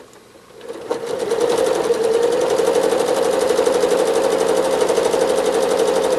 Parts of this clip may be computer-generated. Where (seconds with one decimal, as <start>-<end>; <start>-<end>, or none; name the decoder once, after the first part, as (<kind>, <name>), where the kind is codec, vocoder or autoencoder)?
0.9-4.6 (vocoder, BigVGAN v2)